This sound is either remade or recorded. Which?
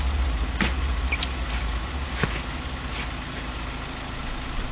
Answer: recorded